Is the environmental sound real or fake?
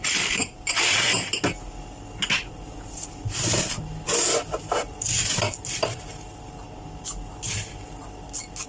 real